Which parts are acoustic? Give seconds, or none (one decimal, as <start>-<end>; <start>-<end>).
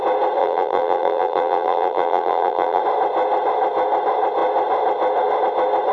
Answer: 0.0-0.4; 2.8-5.9